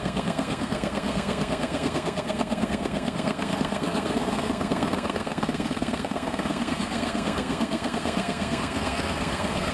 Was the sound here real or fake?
fake